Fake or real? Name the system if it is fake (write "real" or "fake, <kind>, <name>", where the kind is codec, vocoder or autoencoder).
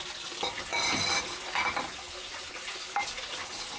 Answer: real